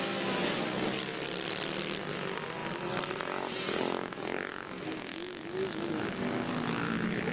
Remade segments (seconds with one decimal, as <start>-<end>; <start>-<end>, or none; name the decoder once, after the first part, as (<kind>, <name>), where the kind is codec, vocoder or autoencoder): 5.1-7.3 (autoencoder, DAC-VAE)